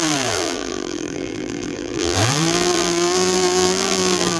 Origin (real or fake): fake